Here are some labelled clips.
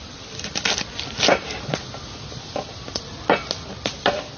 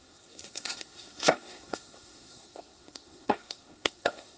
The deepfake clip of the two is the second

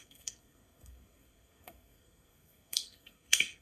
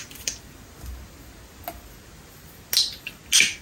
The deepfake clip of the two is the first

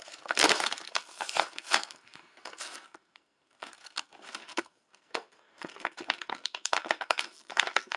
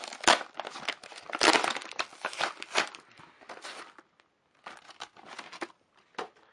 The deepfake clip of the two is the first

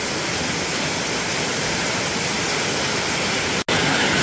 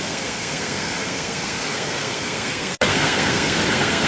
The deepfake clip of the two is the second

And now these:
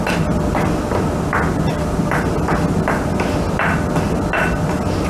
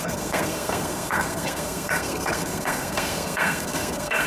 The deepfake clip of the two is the second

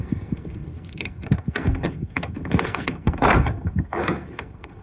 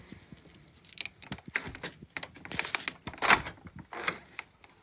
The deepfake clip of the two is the first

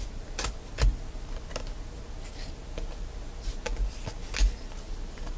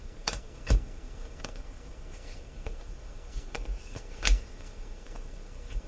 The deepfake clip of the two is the second